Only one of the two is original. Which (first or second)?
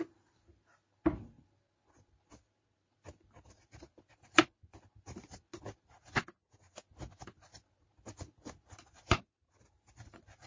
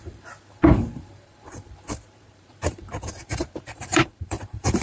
first